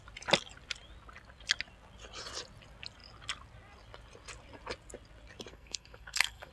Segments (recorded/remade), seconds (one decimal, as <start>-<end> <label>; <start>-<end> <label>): 0.0-5.5 recorded; 5.5-6.5 remade